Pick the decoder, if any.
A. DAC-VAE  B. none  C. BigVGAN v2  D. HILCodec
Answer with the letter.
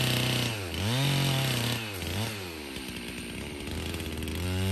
B